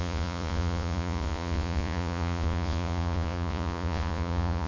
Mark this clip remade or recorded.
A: remade